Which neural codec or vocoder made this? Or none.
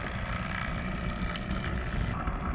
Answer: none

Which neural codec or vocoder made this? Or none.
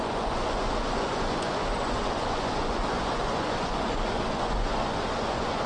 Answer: vocoder, Vocos